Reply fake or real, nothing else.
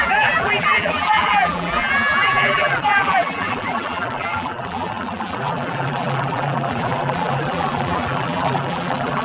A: fake